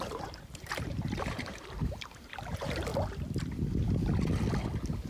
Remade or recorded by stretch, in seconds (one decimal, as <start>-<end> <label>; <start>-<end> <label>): 0.0-2.9 remade; 2.9-5.1 recorded